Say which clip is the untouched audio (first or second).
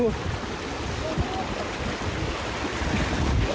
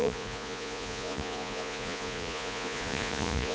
first